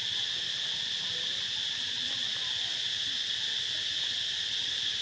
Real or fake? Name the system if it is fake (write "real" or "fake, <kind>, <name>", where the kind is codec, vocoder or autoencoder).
real